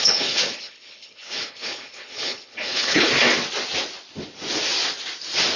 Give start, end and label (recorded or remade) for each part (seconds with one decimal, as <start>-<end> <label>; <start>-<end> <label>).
0.0-3.1 remade; 3.1-5.6 recorded